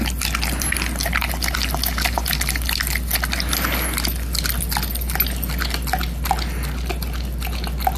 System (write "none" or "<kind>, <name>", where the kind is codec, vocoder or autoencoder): none